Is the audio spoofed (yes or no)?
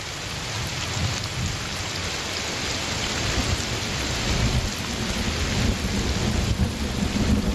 no